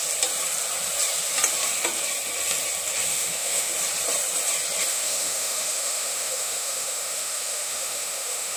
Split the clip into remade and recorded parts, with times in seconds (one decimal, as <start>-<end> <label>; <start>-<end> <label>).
0.0-3.1 recorded; 3.1-3.7 remade; 3.7-4.9 recorded; 4.9-8.6 remade